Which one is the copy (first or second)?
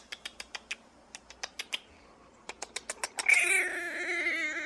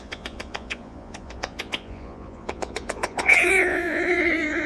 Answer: second